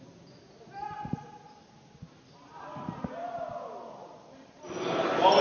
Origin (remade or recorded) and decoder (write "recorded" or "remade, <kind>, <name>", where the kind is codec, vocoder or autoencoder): recorded